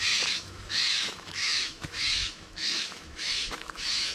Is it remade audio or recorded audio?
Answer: remade